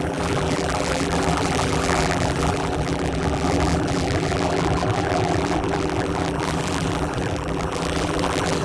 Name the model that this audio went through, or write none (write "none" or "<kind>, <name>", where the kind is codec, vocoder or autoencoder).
vocoder, BigVGAN v2